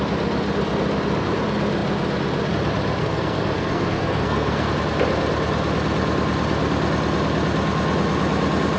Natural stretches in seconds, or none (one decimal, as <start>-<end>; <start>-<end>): 0.0-3.0; 4.7-8.8